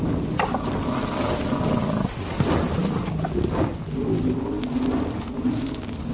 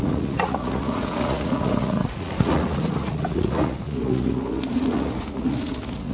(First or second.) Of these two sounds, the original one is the first